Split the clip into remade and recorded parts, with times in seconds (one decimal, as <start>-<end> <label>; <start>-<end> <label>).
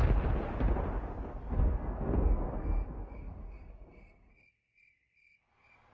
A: 0.0-1.4 recorded; 1.4-4.3 remade; 4.3-5.9 recorded